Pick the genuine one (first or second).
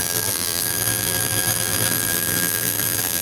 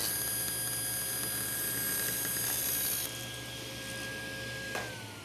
second